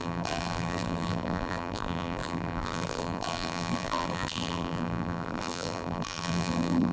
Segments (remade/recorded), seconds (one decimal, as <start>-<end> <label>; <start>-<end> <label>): 0.0-6.9 remade